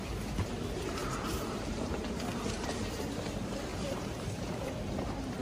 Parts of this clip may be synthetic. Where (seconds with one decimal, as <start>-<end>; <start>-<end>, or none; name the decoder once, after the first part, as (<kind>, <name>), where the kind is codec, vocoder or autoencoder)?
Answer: 1.0-1.9 (vocoder, BigVGAN v2); 2.3-3.1; 3.7-4.7